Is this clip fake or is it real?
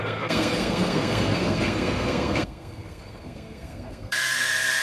fake